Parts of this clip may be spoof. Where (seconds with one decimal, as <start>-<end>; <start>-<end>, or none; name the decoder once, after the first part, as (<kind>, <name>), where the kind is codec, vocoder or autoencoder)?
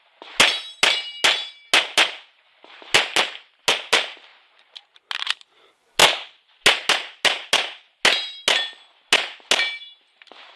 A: none